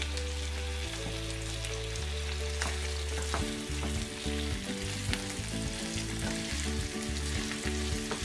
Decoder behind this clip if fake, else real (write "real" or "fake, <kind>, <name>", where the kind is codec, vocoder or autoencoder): real